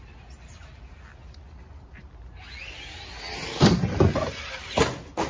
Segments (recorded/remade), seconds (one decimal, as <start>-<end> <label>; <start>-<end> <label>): 0.0-5.3 recorded